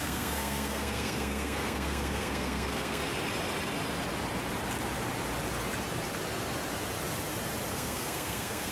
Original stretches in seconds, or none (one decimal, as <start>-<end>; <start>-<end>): 3.0-7.7